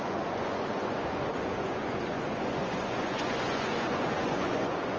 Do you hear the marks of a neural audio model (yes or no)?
yes